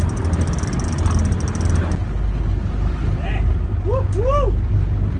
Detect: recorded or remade recorded